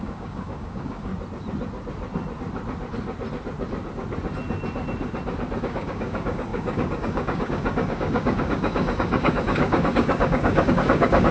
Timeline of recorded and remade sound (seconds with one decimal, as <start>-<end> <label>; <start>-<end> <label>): 0.0-1.1 remade; 1.1-5.6 recorded; 5.6-11.3 remade